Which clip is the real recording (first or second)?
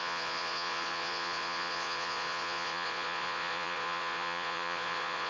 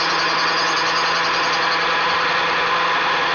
second